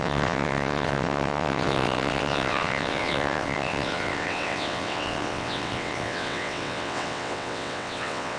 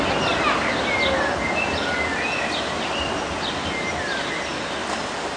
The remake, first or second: first